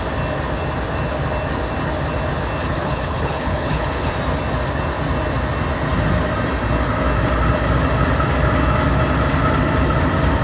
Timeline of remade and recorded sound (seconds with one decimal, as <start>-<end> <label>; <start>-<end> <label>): 0.0-2.6 recorded; 2.6-4.1 remade; 4.1-10.4 recorded